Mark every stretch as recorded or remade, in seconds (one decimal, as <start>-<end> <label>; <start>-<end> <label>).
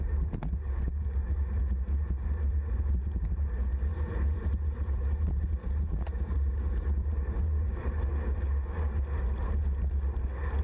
0.0-1.2 remade; 1.2-2.5 recorded; 2.5-8.1 remade; 8.1-10.6 recorded